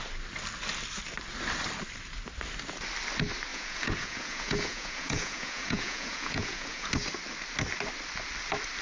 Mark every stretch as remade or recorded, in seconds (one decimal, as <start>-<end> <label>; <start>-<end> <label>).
0.0-3.5 recorded; 3.5-6.9 remade; 6.9-8.8 recorded